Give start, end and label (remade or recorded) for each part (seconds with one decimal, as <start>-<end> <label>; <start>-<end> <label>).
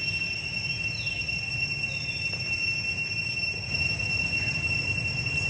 0.0-5.5 recorded